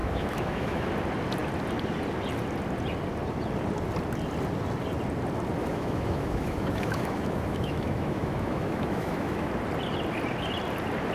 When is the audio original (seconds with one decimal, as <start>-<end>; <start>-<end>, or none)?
0.9-5.6; 9.5-11.1